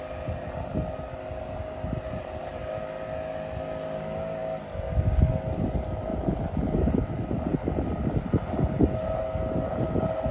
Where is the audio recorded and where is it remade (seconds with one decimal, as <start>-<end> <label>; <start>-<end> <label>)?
0.0-10.3 recorded